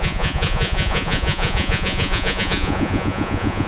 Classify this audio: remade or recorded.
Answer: remade